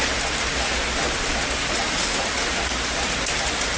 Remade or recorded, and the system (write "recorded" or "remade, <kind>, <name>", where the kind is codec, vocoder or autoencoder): recorded